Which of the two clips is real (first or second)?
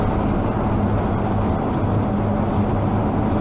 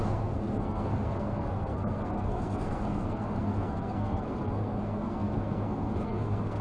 first